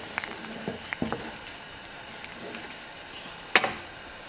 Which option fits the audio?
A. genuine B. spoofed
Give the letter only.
A